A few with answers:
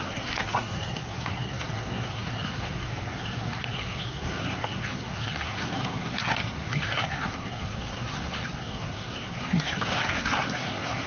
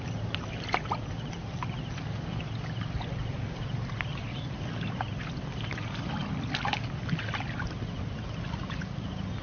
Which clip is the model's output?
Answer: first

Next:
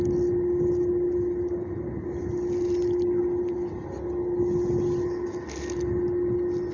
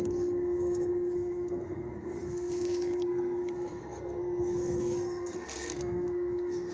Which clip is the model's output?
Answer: second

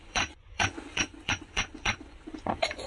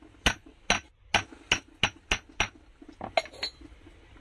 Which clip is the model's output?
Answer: first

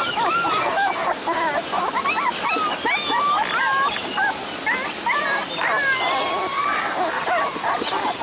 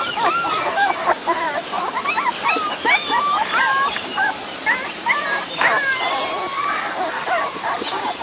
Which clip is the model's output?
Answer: second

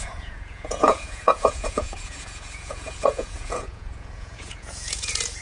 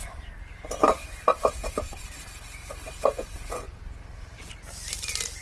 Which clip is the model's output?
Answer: first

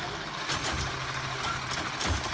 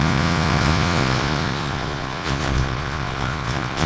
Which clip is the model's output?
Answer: second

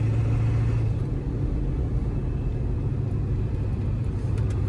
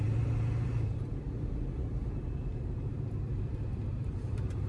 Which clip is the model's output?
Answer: second